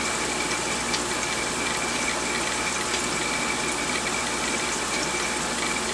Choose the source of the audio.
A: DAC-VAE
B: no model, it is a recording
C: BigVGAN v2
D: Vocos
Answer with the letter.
B